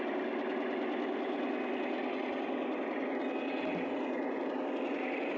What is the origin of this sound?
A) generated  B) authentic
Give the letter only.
B